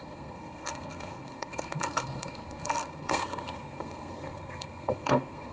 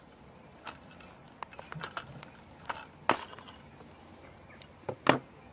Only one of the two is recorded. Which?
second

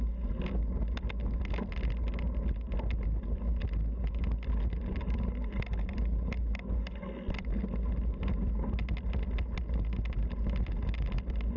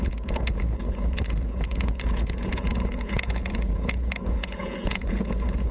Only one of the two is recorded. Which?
first